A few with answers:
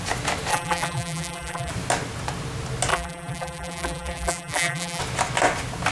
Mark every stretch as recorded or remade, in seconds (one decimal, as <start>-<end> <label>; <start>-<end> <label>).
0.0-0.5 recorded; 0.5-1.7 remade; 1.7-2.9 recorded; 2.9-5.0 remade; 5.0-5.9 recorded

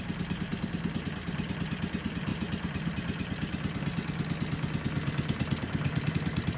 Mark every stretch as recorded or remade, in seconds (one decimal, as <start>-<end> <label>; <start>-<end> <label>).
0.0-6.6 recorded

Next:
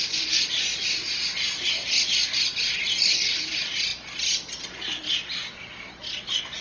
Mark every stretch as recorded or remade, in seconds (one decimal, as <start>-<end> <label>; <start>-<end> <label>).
0.0-6.6 recorded